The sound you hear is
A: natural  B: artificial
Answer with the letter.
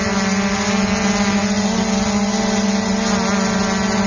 A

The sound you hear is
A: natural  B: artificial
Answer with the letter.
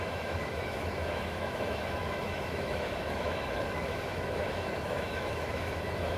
B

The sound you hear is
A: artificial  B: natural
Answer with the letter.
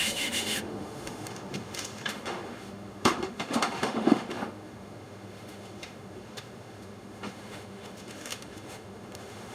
A